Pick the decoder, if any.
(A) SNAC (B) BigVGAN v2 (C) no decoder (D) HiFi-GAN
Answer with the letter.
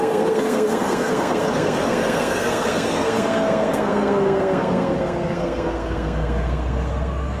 A